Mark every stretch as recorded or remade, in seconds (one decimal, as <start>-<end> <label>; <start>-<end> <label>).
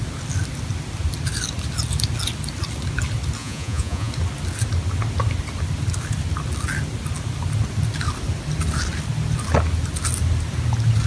0.0-3.4 recorded; 3.4-4.1 remade; 4.1-11.1 recorded